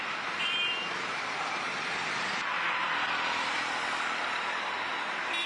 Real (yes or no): no